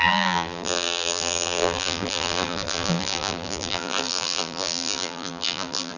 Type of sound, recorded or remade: remade